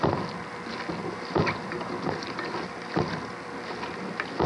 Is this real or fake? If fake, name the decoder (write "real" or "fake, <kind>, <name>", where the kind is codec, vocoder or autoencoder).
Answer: real